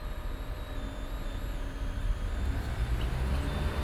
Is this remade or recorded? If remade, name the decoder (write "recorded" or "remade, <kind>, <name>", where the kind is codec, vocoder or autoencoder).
recorded